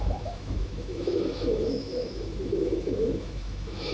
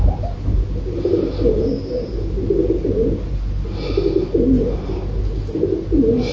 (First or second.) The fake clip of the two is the first